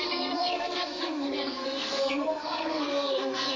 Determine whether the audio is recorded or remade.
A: remade